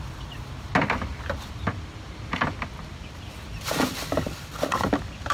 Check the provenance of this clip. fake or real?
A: real